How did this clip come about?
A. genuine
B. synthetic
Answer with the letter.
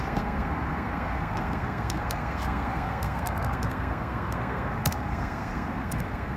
B